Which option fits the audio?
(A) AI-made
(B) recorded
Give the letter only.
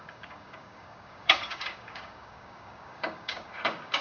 A